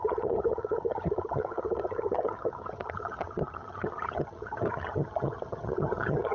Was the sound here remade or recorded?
remade